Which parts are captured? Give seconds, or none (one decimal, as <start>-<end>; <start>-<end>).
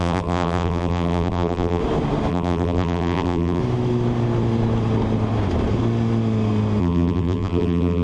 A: 1.8-2.3; 3.6-6.8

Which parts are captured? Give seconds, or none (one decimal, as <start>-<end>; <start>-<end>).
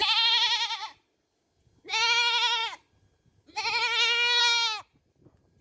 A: 0.0-0.8; 1.4-5.6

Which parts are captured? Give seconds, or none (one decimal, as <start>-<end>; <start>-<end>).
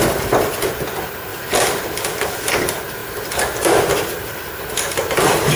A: 0.0-5.6